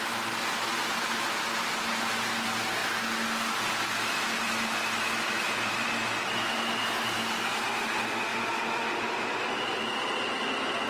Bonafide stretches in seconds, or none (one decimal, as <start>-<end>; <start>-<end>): 0.0-10.9